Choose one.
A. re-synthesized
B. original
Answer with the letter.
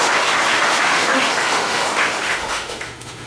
A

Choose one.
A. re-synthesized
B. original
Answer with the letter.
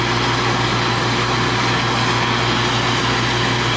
B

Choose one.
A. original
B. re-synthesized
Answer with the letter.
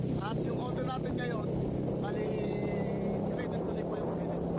A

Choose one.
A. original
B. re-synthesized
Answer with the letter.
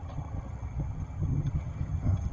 B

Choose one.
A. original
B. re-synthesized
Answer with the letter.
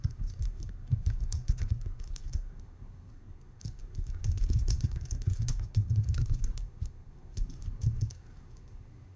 B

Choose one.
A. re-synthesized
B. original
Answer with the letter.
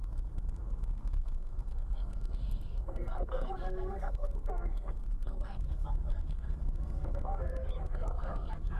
A